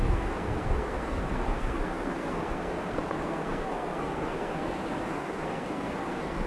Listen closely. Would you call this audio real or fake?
fake